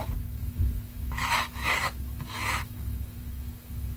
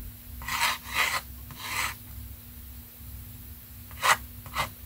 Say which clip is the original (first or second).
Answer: second